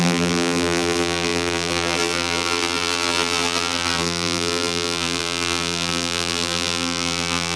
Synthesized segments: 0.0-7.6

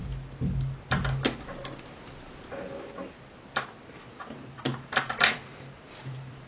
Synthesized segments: 3.9-6.5

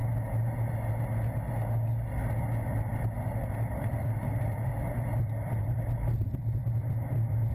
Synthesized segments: 2.7-7.5

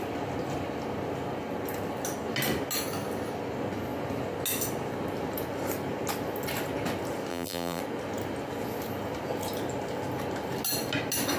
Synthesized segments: 7.3-7.8

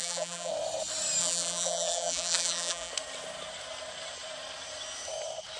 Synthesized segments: 0.0-0.5; 1.2-2.9

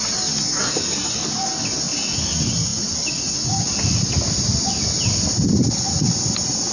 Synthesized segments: none

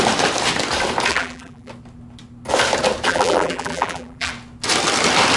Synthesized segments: 1.1-1.7; 3.1-4.3

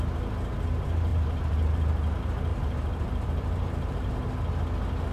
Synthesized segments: 1.1-2.1; 2.5-4.1